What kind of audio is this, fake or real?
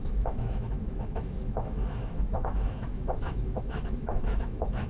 fake